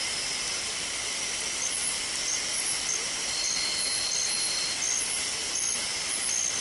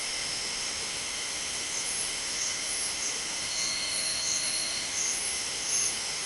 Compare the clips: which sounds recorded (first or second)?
first